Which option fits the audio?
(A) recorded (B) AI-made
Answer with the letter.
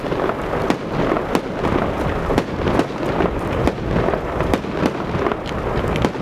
A